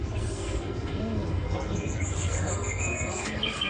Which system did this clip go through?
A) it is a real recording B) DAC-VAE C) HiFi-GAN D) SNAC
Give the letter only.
D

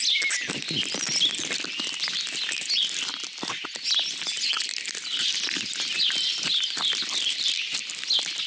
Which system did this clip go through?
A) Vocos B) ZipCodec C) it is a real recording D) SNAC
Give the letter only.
C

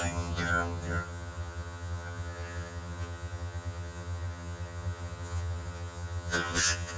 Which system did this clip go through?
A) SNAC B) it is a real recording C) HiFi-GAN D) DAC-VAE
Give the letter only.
C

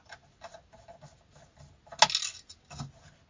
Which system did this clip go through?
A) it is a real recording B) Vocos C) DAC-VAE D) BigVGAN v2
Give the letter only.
A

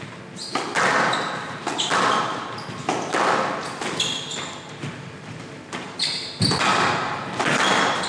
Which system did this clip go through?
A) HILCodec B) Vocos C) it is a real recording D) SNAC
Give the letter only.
C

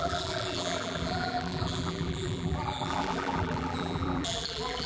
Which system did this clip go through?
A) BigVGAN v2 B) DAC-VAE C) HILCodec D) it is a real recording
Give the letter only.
A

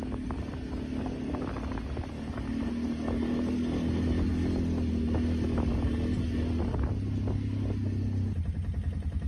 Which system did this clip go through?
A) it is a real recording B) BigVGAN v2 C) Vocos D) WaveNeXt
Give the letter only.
A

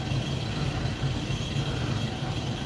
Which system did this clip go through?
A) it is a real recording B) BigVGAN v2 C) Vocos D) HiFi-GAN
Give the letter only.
A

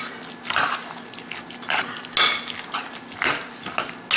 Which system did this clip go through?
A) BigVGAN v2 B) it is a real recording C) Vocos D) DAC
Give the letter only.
B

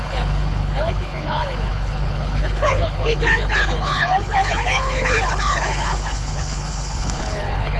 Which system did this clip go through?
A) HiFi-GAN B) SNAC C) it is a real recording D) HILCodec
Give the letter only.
D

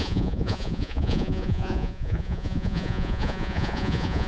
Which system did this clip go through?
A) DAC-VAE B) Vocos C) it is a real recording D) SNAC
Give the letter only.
B